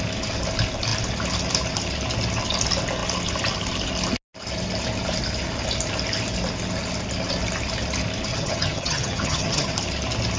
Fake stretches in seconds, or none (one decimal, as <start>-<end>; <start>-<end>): 8.3-9.7